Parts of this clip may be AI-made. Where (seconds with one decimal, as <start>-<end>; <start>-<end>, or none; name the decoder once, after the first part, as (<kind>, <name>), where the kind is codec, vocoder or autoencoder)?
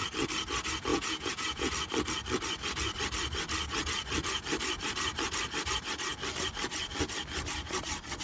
0.9-1.7 (vocoder, Vocos)